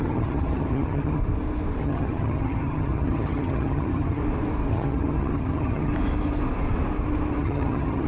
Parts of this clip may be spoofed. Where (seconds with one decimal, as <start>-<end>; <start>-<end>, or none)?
0.0-1.2; 1.8-4.2; 4.7-5.9; 7.4-8.1